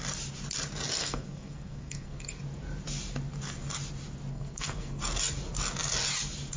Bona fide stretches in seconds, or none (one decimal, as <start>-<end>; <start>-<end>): 0.0-1.0; 2.4-4.3; 5.0-6.6